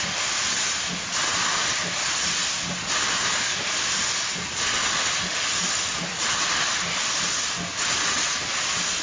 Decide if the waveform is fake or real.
real